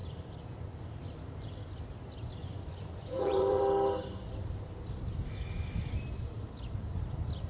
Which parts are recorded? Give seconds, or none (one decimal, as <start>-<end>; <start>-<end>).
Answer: 0.0-2.4; 3.6-7.5